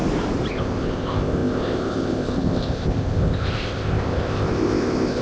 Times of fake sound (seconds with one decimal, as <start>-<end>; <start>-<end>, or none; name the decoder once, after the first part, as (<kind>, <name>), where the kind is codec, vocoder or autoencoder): 0.5-5.2 (codec, ZipCodec)